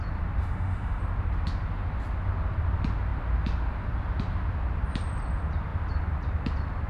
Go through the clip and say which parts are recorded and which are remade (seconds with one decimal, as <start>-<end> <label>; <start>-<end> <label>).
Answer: 0.0-0.4 recorded; 0.4-1.0 remade; 1.0-6.9 recorded

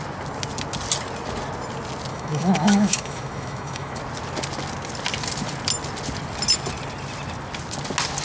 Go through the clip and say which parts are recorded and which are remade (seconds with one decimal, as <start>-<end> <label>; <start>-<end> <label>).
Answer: 0.0-2.1 recorded; 2.1-4.0 remade; 4.0-8.2 recorded

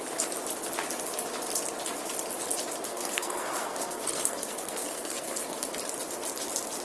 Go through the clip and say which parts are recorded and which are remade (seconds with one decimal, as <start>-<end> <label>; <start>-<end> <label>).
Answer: 0.0-2.9 recorded; 2.9-5.7 remade; 5.7-6.8 recorded

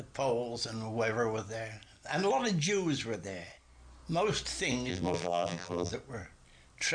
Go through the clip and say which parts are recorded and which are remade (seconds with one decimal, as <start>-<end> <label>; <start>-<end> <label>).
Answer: 0.0-4.9 recorded; 4.9-5.9 remade; 5.9-6.9 recorded

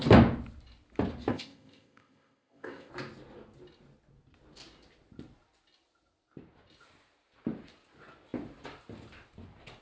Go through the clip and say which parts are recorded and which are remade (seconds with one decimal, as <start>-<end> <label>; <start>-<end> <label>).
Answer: 0.0-1.3 recorded; 1.3-2.9 remade; 2.9-9.8 recorded

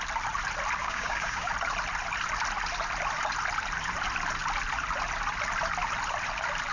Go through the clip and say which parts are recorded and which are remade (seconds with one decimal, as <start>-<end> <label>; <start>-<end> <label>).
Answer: 0.0-0.8 recorded; 0.8-1.5 remade; 1.5-6.7 recorded

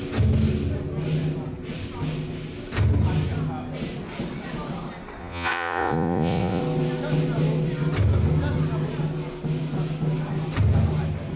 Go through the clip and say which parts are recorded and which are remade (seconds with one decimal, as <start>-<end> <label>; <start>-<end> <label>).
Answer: 0.0-5.2 recorded; 5.2-6.6 remade; 6.6-11.4 recorded

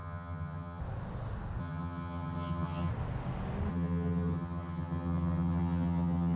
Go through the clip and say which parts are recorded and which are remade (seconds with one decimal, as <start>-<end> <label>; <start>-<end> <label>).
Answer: 0.0-0.8 remade; 0.8-1.6 recorded; 1.6-2.9 remade; 2.9-3.7 recorded; 3.7-6.4 remade